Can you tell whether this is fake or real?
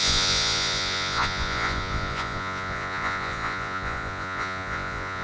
fake